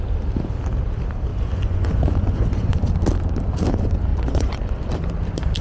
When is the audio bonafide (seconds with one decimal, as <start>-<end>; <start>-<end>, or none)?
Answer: 0.0-1.3; 2.8-4.1; 4.9-5.6